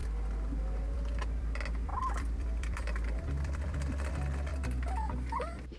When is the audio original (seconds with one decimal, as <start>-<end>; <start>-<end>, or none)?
0.0-1.9; 4.1-5.8